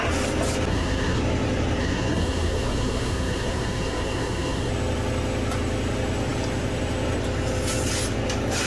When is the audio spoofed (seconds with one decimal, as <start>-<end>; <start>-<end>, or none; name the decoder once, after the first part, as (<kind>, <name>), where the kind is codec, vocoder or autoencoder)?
0.7-1.2 (codec, SNAC); 1.8-4.7